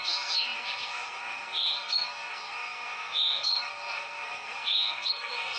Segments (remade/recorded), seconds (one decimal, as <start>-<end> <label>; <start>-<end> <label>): 0.0-5.6 remade